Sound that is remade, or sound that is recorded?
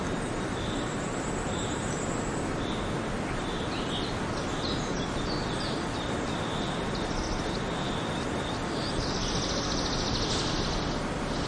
recorded